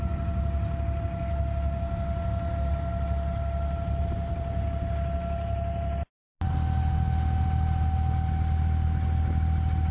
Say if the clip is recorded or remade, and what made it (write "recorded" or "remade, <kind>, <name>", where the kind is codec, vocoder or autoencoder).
recorded